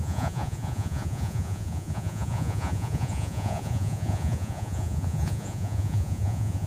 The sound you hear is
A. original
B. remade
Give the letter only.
B